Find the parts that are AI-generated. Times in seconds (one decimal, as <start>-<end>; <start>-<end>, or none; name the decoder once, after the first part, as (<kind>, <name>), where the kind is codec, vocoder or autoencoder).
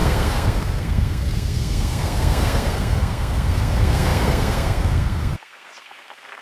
0.0-6.4 (codec, SNAC)